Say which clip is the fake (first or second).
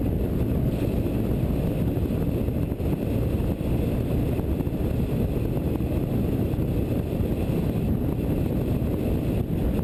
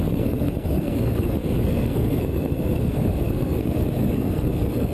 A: second